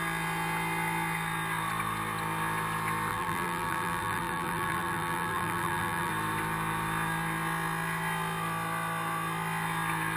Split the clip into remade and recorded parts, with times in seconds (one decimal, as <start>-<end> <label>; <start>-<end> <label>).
0.0-3.1 recorded; 3.1-6.1 remade; 6.1-10.2 recorded